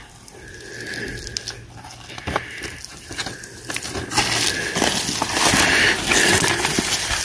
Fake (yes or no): no